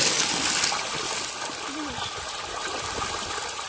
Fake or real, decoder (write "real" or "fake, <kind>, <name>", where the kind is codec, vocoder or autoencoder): real